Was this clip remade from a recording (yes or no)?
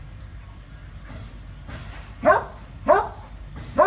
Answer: no